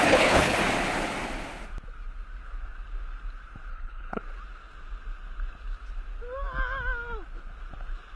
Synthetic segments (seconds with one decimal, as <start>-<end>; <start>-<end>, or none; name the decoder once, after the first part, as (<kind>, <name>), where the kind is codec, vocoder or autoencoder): 0.0-0.6 (codec, HILCodec); 3.7-4.2